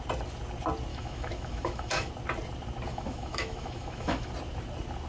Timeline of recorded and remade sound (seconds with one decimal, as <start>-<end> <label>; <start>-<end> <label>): 0.0-0.9 recorded; 0.9-2.1 remade; 2.1-2.9 recorded; 2.9-4.3 remade; 4.3-5.1 recorded